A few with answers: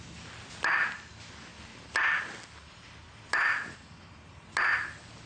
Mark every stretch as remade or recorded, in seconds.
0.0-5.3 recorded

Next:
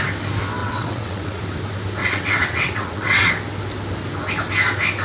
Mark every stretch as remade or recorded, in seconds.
0.0-0.6 recorded; 0.6-1.4 remade; 1.4-2.0 recorded; 2.0-3.3 remade; 3.3-5.0 recorded

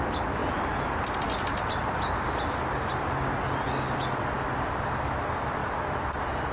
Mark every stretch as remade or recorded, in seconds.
0.0-5.6 recorded; 5.6-6.5 remade

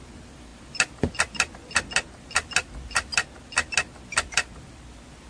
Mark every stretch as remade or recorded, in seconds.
0.0-5.3 recorded

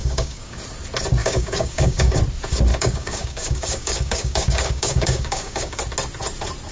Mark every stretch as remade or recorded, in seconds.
0.0-0.6 remade; 0.6-1.2 recorded; 1.2-2.2 remade; 2.2-2.7 recorded; 2.7-5.8 remade; 5.8-6.7 recorded